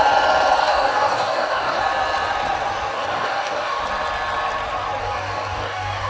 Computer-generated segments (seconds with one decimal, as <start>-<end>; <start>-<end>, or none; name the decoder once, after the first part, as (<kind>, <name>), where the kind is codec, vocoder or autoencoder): 0.6-1.8 (codec, DAC); 2.9-3.8; 5.0-6.1